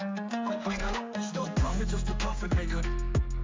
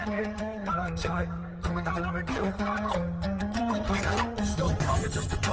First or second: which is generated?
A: second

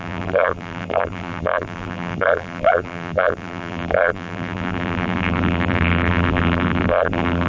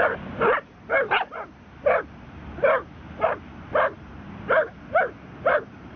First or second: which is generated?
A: first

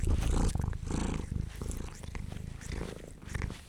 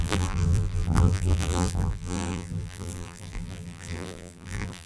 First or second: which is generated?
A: second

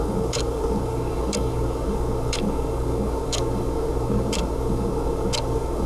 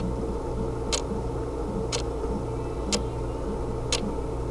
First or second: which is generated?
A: first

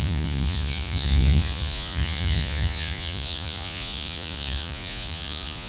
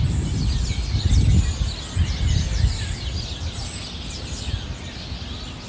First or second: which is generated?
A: first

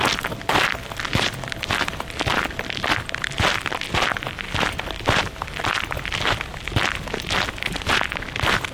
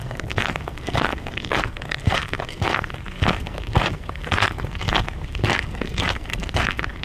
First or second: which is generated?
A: second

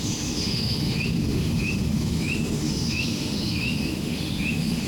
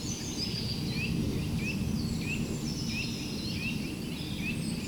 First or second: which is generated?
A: first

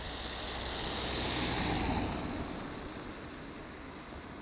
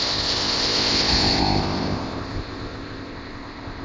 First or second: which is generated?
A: second